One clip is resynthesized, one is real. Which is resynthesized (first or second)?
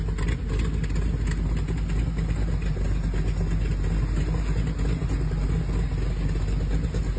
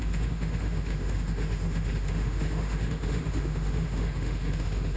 second